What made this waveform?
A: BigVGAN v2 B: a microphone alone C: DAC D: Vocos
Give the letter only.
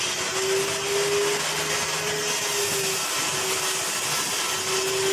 B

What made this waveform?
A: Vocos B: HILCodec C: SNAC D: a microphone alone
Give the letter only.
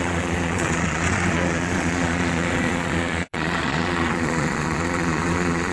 A